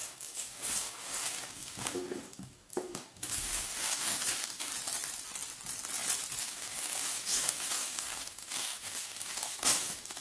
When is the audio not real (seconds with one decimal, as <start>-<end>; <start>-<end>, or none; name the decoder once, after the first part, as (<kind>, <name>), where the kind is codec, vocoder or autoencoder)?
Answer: 0.0-4.7 (codec, DAC); 6.4-10.2